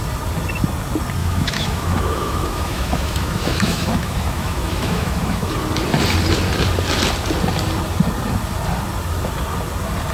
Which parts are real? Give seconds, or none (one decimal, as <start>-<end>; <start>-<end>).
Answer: 0.0-1.2; 5.5-10.1

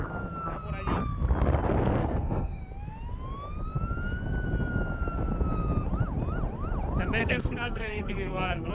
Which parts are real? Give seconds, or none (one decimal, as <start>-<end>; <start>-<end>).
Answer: 0.0-2.0; 2.6-7.2

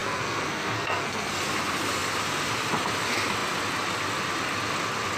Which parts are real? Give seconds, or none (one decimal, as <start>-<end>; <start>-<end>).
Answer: 1.4-5.2